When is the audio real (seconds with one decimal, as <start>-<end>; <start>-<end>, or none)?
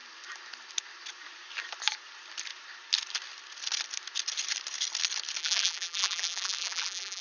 0.0-5.4